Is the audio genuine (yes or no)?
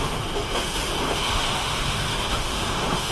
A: no